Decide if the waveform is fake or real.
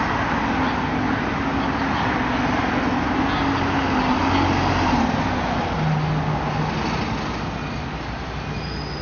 real